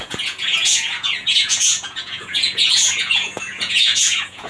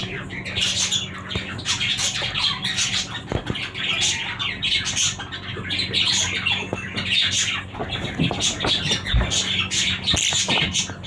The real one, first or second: second